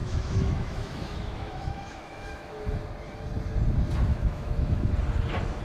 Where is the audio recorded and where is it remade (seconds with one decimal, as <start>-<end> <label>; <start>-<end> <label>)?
0.0-2.6 remade; 2.6-4.1 recorded; 4.1-4.9 remade; 4.9-5.6 recorded